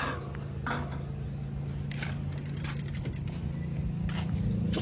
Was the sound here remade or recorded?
recorded